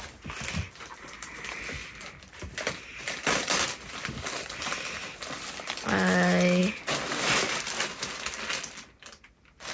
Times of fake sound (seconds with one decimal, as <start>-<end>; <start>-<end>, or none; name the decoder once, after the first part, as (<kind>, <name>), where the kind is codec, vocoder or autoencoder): none